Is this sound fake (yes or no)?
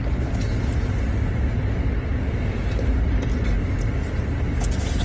no